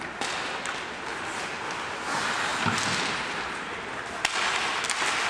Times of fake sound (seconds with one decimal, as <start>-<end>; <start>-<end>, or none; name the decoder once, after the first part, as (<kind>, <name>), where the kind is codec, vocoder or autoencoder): none